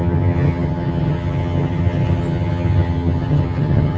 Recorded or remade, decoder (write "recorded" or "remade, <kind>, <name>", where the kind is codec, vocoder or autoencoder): remade, vocoder, HiFi-GAN